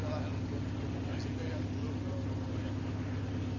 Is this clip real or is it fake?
real